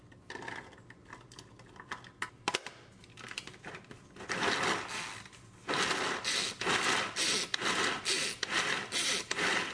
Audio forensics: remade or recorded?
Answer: recorded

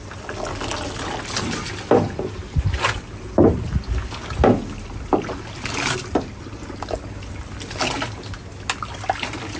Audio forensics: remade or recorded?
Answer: recorded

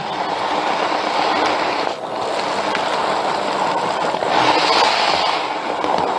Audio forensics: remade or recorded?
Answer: recorded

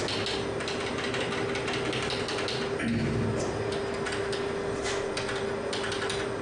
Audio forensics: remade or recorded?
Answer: recorded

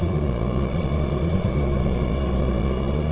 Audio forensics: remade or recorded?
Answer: remade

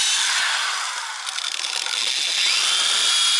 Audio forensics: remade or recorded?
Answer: recorded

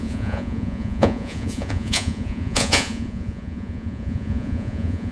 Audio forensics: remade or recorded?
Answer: remade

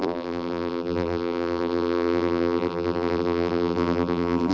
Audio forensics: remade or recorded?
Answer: remade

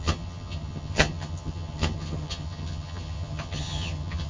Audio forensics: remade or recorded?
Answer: remade